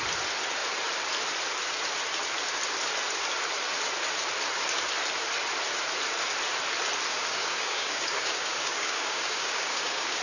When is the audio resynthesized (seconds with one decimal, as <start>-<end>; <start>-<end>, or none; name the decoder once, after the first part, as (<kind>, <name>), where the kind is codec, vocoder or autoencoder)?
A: 7.1-10.2 (codec, DAC)